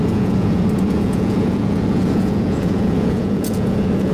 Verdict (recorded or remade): remade